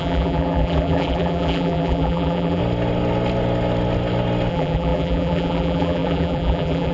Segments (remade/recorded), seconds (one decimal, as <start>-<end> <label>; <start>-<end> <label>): 0.0-2.6 remade; 2.6-4.5 recorded; 4.5-6.9 remade